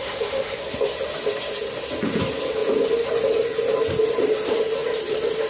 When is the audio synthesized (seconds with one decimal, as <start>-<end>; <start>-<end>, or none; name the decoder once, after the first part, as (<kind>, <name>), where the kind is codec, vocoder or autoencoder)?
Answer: 0.0-0.6 (autoencoder, DAC-VAE)

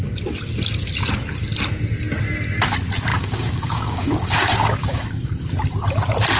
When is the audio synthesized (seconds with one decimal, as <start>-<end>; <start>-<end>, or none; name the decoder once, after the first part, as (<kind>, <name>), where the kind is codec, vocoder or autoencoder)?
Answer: 3.1-5.3 (codec, DAC)

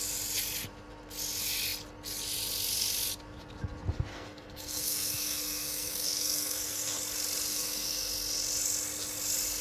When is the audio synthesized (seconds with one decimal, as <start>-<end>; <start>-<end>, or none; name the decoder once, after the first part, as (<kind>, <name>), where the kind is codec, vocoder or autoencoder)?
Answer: 4.1-7.0 (codec, SNAC); 7.5-8.1

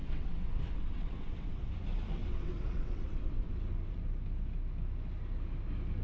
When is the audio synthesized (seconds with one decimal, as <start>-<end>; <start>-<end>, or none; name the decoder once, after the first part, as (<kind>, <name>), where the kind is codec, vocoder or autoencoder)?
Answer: 0.0-1.7 (vocoder, WaveNeXt); 2.2-3.5

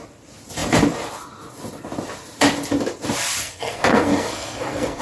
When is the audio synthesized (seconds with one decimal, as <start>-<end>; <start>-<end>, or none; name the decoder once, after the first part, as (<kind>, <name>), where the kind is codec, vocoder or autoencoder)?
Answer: 3.4-5.0 (codec, SNAC)

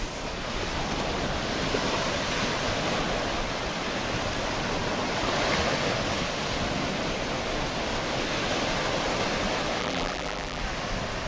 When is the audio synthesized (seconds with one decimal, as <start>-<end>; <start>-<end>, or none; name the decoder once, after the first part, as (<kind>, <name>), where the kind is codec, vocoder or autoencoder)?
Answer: 9.8-10.6 (vocoder, BigVGAN v2)

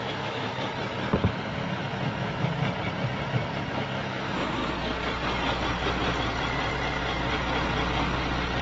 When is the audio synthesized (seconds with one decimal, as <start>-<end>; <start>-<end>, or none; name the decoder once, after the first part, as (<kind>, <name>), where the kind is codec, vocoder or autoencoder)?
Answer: 0.0-0.5 (autoencoder, DAC-VAE); 1.2-2.6; 3.7-4.6

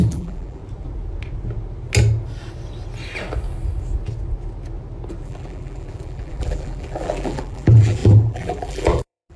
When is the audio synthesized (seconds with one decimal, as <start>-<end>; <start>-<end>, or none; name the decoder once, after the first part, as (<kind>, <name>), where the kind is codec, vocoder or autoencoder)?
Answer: 0.0-0.6 (vocoder, BigVGAN v2); 5.2-9.4